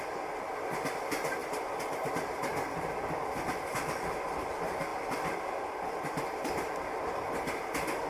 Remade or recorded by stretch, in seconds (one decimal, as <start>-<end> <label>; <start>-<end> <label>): 0.0-1.4 recorded; 1.4-2.1 remade; 2.1-4.9 recorded; 4.9-7.0 remade; 7.0-8.1 recorded